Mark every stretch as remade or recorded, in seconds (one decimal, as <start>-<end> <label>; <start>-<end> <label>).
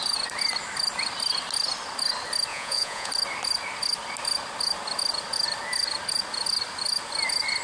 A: 0.0-2.5 recorded; 2.5-3.1 remade; 3.1-7.6 recorded